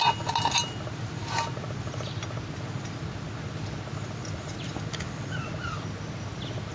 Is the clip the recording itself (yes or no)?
yes